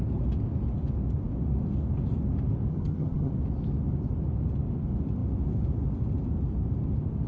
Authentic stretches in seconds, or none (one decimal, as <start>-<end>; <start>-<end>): 0.0-2.7; 3.3-7.3